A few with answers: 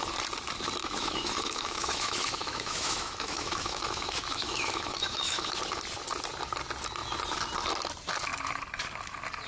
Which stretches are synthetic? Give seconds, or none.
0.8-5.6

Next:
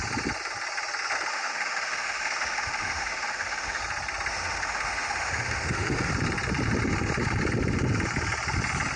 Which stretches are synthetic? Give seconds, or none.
1.3-3.8; 4.3-6.1

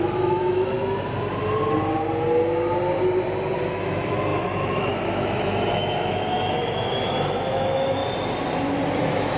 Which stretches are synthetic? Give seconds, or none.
0.0-0.7; 3.7-8.0; 9.0-9.4

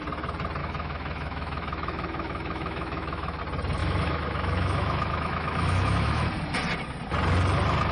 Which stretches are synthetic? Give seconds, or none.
0.6-3.4; 3.8-6.3

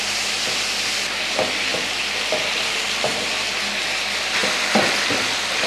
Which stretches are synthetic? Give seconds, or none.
none

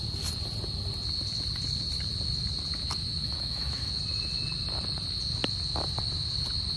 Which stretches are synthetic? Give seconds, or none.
3.2-3.9

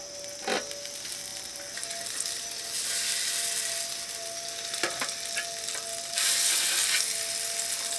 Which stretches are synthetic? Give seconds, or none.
none